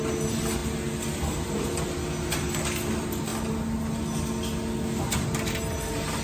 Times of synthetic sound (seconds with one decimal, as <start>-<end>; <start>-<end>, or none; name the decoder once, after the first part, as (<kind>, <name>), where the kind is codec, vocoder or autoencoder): none